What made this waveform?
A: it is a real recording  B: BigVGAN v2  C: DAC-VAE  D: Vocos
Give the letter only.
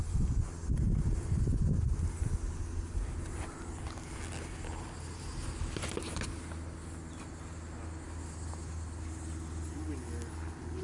A